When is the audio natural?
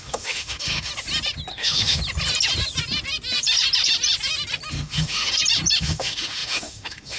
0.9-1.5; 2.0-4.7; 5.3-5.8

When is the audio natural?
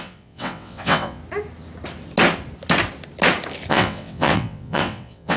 1.2-3.7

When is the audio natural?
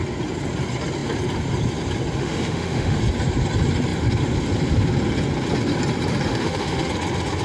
0.0-2.2; 3.0-6.3; 6.9-7.4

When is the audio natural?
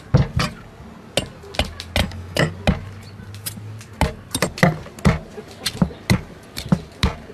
0.0-2.0; 2.5-7.3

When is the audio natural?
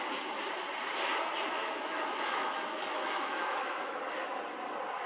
0.0-1.6; 4.3-5.1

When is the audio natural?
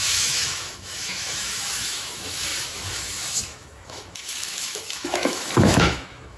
none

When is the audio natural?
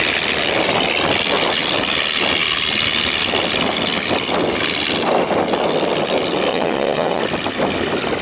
0.0-6.5; 7.2-8.2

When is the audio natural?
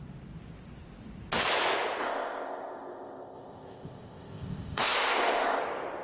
0.0-2.0; 5.6-6.0